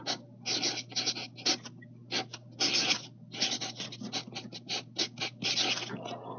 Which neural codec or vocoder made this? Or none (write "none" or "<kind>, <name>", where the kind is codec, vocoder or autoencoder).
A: none